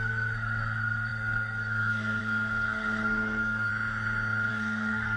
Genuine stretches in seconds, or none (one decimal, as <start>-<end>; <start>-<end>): 3.7-4.5